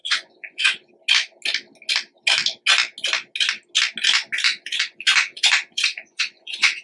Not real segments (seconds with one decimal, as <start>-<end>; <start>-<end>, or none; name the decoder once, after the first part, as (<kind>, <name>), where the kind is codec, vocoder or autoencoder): 0.0-0.9 (vocoder, Vocos); 4.5-6.8